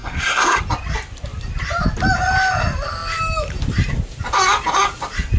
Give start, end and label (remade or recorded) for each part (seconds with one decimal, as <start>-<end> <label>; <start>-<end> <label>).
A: 0.0-0.6 remade; 0.6-5.4 recorded